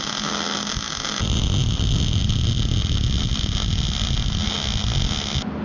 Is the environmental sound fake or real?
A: real